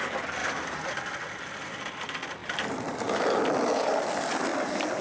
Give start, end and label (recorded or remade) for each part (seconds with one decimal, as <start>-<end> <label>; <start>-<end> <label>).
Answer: 0.0-0.4 recorded; 0.4-1.0 remade; 1.0-2.4 recorded; 2.4-3.4 remade; 3.4-4.5 recorded; 4.5-5.0 remade